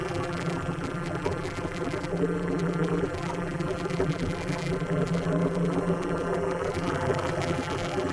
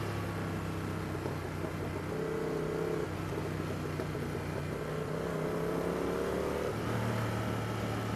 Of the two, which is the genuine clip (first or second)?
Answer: second